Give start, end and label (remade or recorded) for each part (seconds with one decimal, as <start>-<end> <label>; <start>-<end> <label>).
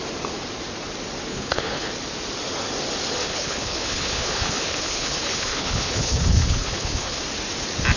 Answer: 0.0-1.3 recorded; 1.3-1.9 remade; 1.9-3.2 recorded; 3.2-7.2 remade; 7.2-8.0 recorded